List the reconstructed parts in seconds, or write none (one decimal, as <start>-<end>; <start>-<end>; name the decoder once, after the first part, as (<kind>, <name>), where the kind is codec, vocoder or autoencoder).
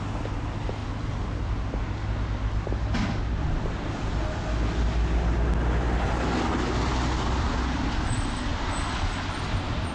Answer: none